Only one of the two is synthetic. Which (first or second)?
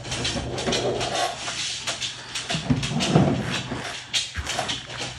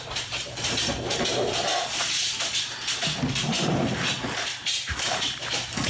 second